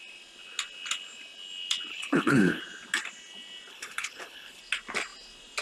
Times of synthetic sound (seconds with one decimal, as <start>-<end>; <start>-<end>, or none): 1.9-2.6; 3.7-4.6